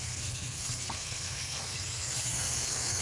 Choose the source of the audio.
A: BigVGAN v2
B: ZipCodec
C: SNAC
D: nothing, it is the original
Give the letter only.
C